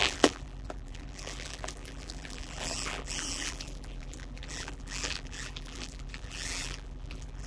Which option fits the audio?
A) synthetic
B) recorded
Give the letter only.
A